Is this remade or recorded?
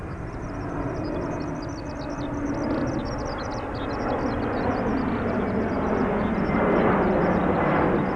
recorded